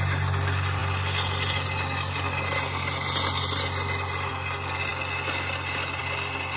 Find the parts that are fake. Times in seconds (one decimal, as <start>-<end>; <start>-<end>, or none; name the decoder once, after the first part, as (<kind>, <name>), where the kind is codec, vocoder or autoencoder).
none

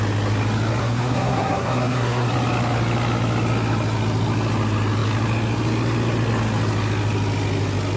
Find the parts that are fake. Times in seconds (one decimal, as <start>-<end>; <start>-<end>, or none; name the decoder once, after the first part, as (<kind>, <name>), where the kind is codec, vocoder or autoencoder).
0.8-2.3 (codec, SNAC)

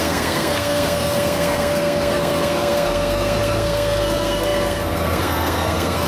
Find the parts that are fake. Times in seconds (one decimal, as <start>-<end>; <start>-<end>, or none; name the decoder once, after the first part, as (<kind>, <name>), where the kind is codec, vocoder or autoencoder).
0.0-6.1 (codec, SNAC)

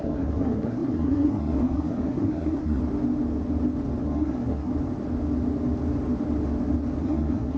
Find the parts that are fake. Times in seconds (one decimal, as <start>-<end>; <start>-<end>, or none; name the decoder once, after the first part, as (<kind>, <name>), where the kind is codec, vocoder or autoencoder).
0.0-2.8 (codec, SNAC); 4.0-4.7; 7.0-7.6

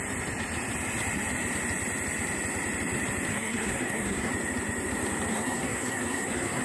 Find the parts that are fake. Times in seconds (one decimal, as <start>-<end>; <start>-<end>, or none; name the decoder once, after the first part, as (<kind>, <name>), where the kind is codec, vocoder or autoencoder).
3.3-4.3 (codec, SNAC); 5.3-6.6

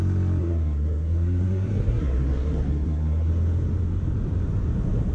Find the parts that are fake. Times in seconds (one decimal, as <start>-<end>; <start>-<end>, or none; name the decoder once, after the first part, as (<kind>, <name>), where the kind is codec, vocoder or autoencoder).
0.4-3.3 (codec, SNAC)

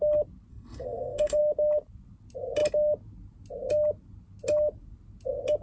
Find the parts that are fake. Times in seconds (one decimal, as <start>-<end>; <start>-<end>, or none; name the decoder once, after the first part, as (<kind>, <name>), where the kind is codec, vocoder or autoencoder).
0.5-1.4 (codec, SNAC)

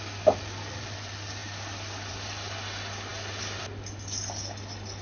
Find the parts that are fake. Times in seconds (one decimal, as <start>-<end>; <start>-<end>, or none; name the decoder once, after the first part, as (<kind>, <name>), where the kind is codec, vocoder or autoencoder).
none